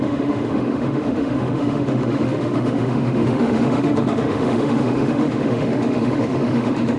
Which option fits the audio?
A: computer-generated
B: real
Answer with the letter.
A